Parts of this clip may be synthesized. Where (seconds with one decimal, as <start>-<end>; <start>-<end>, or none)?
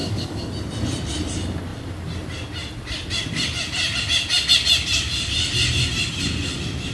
0.0-0.5